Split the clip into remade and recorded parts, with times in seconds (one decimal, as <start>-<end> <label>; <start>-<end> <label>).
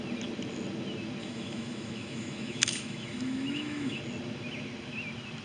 0.0-1.2 recorded; 1.2-4.0 remade; 4.0-5.4 recorded